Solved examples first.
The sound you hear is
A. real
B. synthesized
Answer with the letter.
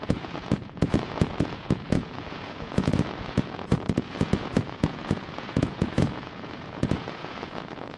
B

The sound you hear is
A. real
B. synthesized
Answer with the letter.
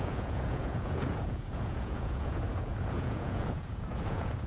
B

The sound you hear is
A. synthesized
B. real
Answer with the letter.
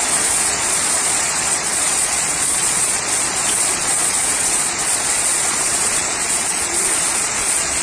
A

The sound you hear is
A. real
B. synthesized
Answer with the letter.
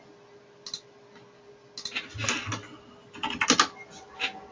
A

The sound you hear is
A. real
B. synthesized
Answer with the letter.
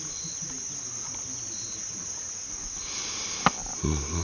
A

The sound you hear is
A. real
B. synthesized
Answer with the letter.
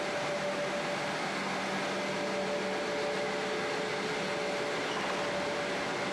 A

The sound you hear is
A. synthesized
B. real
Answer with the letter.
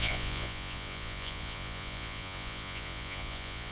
A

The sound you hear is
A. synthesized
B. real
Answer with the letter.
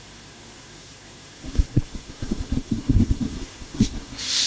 A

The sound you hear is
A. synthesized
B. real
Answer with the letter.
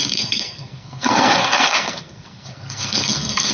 A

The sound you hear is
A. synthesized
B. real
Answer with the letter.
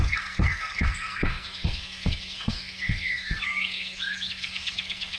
A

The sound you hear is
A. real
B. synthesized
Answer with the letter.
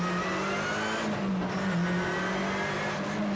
A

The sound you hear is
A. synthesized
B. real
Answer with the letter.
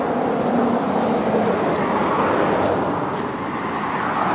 B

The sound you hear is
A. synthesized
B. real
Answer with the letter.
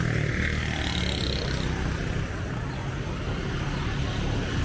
B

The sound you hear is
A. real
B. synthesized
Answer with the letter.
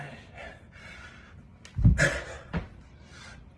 A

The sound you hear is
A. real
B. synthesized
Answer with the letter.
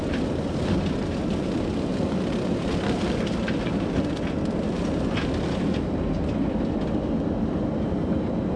A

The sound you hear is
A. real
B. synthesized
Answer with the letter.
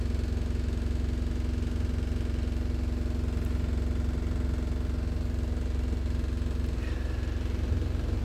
A